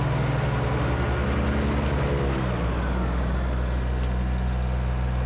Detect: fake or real real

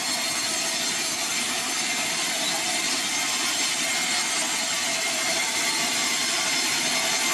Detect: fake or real real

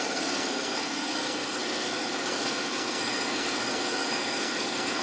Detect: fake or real fake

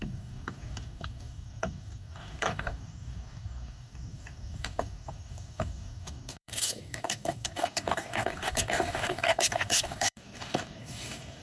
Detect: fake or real fake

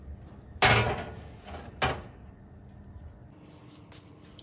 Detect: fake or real real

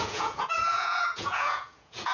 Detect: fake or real fake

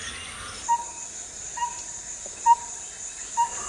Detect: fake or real real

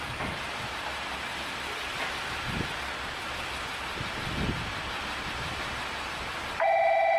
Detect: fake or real real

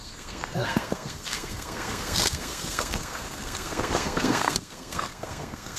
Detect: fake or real fake